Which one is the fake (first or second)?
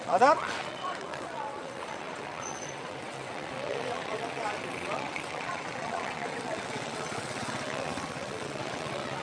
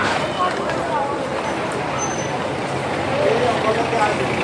first